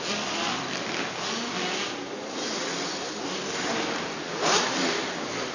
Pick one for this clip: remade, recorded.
recorded